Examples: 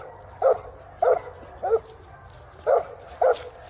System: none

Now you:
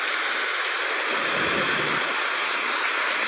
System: none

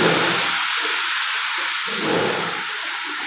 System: none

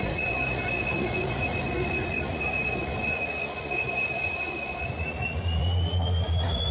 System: vocoder, Vocos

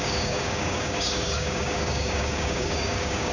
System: codec, DAC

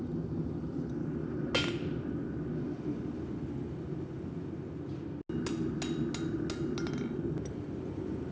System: none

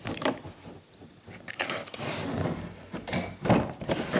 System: none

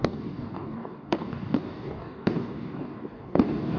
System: codec, DAC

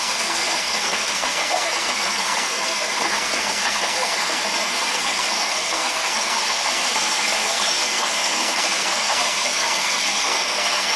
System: codec, SNAC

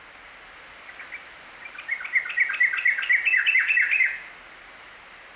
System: none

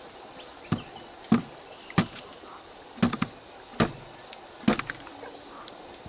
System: none